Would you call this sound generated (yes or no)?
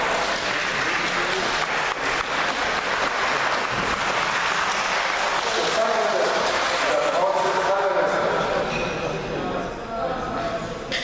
no